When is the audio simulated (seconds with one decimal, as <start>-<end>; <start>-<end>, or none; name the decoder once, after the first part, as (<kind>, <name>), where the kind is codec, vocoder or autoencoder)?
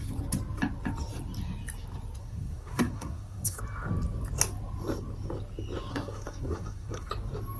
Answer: 2.2-3.6 (codec, SNAC); 5.9-7.1